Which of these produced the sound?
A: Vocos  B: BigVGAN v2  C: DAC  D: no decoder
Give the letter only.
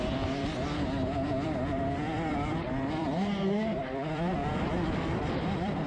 B